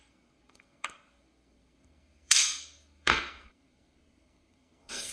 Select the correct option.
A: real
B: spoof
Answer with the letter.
B